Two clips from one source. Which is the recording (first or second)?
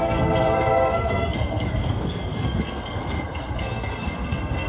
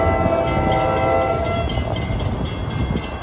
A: second